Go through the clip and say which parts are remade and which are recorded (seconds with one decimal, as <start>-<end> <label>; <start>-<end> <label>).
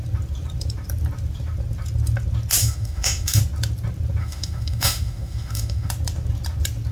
0.0-2.6 recorded; 2.6-3.4 remade; 3.4-4.2 recorded; 4.2-5.9 remade; 5.9-6.9 recorded